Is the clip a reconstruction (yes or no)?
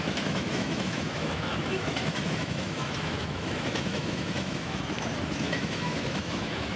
yes